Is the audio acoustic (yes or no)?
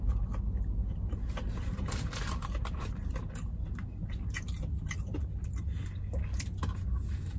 yes